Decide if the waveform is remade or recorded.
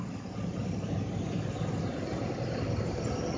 recorded